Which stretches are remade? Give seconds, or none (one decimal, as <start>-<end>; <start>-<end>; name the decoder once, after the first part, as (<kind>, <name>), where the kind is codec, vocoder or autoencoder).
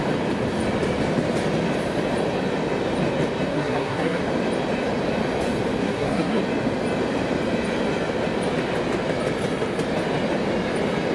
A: 3.5-4.2 (codec, SNAC); 5.8-6.4